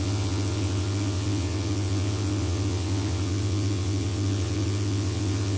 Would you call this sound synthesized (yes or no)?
yes